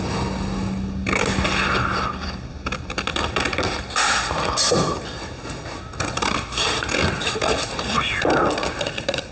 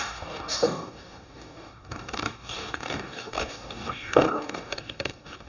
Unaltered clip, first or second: first